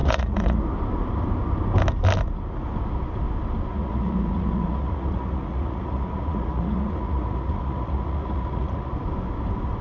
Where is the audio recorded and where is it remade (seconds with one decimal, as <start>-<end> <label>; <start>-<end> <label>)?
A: 0.0-0.6 remade; 0.6-3.7 recorded; 3.7-8.9 remade; 8.9-9.8 recorded